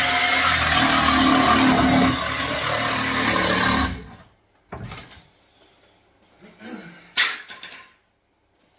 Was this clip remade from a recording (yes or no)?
no